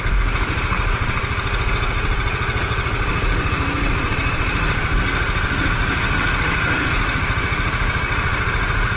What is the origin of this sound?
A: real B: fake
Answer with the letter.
A